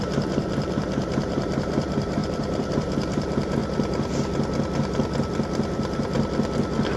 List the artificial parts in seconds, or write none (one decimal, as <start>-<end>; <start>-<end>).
0.0-3.6